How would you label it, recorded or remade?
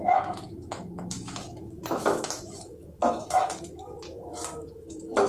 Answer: remade